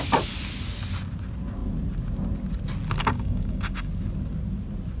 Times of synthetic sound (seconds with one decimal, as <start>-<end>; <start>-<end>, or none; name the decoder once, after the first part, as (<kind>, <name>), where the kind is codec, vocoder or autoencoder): 3.0-3.9 (codec, DAC)